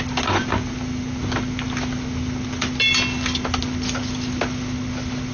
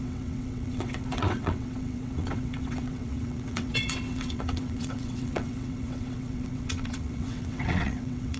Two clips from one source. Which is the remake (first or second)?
second